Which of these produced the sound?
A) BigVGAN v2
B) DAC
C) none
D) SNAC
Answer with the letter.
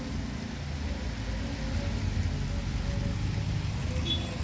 C